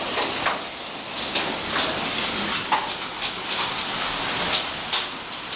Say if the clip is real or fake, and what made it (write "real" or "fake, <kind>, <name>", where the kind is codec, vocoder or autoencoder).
real